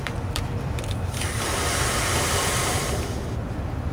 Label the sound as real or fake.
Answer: fake